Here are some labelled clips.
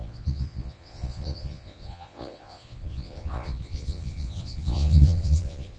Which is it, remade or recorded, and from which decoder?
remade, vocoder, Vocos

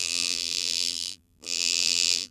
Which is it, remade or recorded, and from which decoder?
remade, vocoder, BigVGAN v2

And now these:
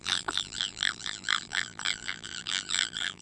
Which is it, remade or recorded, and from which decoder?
remade, vocoder, BigVGAN v2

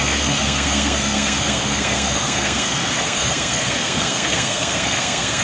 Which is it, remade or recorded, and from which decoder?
remade, codec, SNAC